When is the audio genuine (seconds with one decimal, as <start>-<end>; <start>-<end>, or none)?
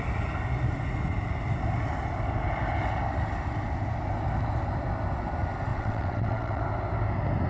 0.0-5.7; 6.6-7.5